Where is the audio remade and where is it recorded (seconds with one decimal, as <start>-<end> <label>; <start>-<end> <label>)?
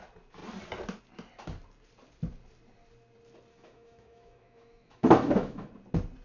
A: 0.0-3.5 recorded; 3.5-5.7 remade; 5.7-6.2 recorded